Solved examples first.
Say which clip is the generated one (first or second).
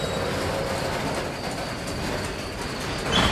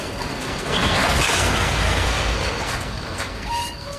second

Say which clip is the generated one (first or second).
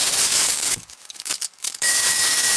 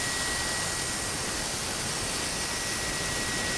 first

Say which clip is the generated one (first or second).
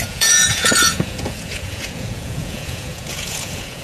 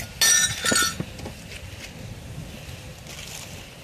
first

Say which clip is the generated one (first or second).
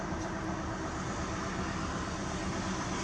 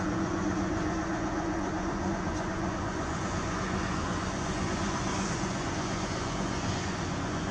second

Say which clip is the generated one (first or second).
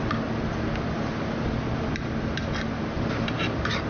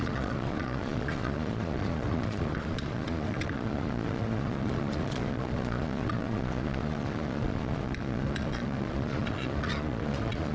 second